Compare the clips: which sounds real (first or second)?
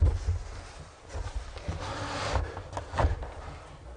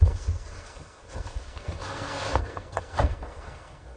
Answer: first